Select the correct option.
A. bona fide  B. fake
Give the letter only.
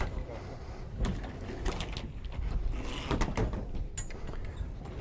A